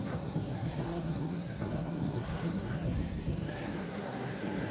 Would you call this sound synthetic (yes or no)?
yes